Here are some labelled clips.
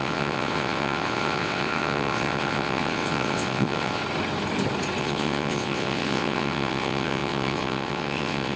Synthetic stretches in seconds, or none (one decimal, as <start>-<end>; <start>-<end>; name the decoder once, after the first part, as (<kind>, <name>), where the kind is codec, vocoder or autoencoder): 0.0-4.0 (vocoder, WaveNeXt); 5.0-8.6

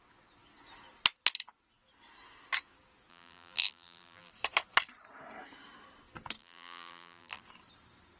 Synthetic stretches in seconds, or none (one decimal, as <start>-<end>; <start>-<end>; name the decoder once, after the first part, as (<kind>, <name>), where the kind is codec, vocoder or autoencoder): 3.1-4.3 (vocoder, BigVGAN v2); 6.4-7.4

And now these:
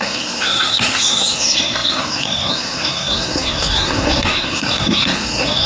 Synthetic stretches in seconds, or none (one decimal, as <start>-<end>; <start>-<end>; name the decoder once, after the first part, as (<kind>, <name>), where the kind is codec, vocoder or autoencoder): 0.0-5.7 (codec, SNAC)